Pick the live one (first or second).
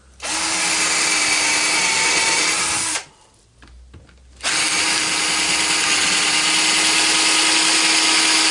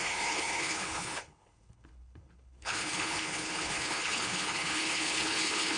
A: first